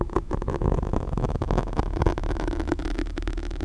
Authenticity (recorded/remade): remade